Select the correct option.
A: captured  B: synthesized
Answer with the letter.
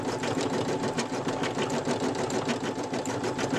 A